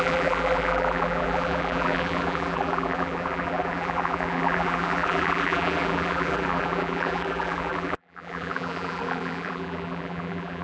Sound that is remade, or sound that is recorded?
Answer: remade